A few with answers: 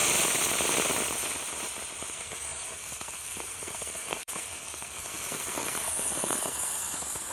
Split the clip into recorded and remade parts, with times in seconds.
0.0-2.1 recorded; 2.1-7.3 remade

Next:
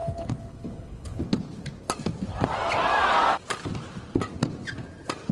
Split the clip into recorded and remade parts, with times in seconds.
0.0-1.2 remade; 1.2-5.3 recorded

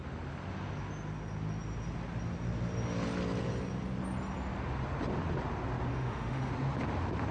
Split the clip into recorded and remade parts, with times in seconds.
0.0-5.9 recorded; 5.9-6.5 remade; 6.5-7.3 recorded

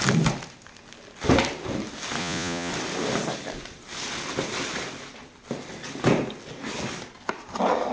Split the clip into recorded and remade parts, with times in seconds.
0.0-2.2 recorded; 2.2-2.7 remade; 2.7-7.9 recorded